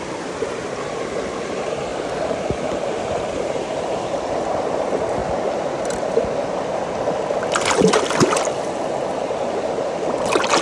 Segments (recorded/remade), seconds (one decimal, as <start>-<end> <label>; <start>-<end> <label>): 0.0-10.6 recorded